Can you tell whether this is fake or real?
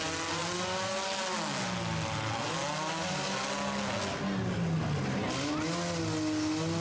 real